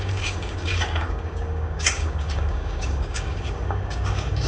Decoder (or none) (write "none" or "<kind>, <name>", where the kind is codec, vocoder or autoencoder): codec, DAC